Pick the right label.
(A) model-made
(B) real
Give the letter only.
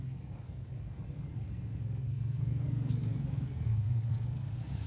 A